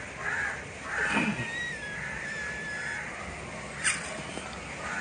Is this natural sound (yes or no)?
yes